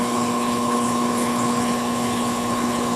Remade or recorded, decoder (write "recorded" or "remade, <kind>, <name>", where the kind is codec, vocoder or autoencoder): remade, codec, HILCodec